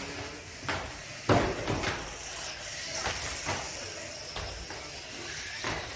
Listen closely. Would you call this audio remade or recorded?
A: recorded